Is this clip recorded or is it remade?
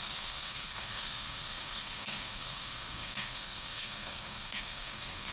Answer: remade